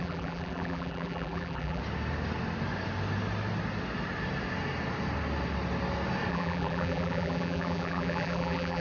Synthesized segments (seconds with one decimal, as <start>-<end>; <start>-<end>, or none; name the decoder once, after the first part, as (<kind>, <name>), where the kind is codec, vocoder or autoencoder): 0.0-1.8 (vocoder, BigVGAN v2); 6.3-8.8